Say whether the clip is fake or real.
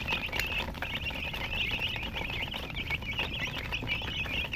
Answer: real